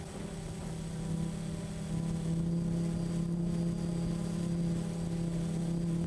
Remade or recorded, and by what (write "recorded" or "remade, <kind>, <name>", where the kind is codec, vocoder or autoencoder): recorded